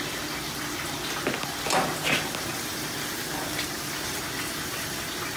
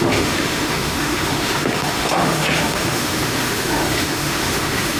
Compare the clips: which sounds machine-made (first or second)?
second